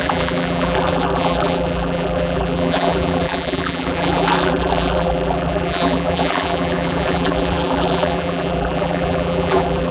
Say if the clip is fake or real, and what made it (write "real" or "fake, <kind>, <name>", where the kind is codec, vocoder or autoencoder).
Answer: fake, vocoder, BigVGAN v2